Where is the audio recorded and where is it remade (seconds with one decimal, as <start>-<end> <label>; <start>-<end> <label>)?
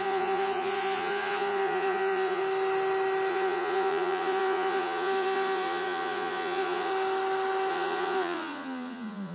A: 0.0-2.4 remade; 2.4-3.3 recorded; 3.3-6.9 remade; 6.9-7.7 recorded; 7.7-9.3 remade